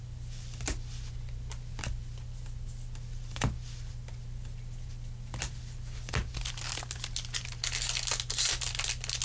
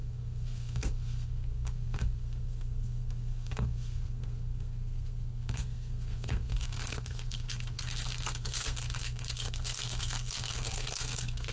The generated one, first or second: second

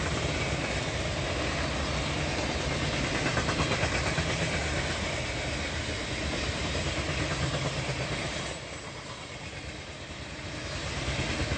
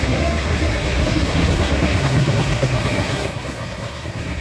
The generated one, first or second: second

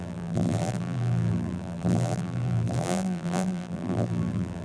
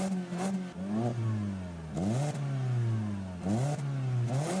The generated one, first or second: first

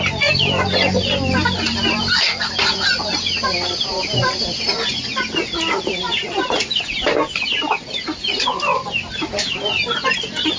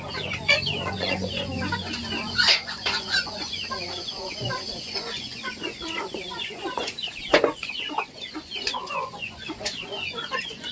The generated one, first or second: second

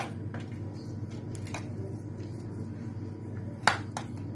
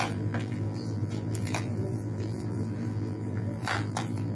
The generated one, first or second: second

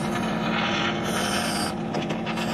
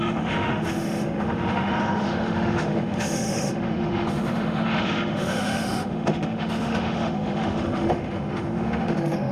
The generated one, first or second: second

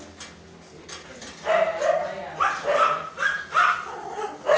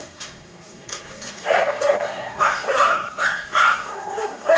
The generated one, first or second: second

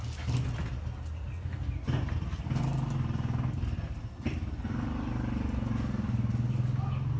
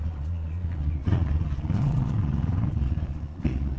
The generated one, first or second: second